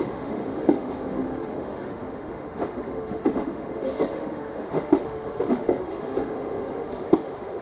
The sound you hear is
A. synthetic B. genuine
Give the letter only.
A